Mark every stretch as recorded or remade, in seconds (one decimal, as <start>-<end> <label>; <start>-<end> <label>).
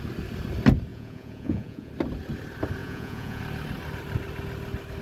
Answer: 0.0-0.9 recorded; 0.9-1.9 remade; 1.9-2.8 recorded; 2.8-3.4 remade; 3.4-5.0 recorded